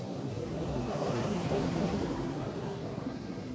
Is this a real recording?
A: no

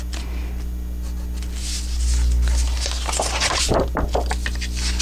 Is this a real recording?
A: yes